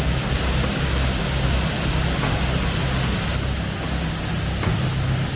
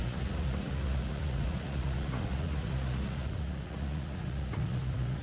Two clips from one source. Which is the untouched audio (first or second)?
first